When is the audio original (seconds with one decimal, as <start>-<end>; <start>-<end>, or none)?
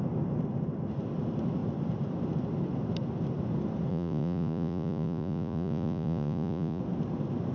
0.0-3.9; 6.8-7.5